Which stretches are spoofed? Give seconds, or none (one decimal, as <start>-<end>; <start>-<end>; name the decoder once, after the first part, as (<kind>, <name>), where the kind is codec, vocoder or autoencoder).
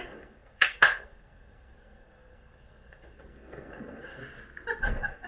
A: 0.0-4.2 (codec, SNAC); 4.8-5.3